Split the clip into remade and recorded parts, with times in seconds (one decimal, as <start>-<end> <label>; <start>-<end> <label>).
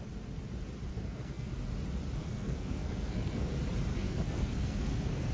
0.0-0.9 recorded; 0.9-1.5 remade; 1.5-2.2 recorded; 2.2-3.5 remade; 3.5-3.9 recorded; 3.9-5.3 remade